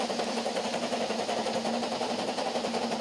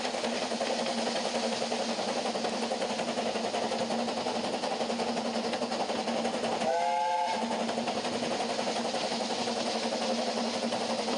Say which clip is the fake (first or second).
first